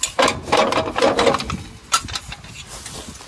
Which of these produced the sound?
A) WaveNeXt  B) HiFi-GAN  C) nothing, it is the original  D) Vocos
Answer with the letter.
C